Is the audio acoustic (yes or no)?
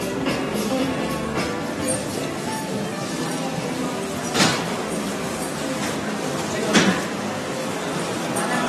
no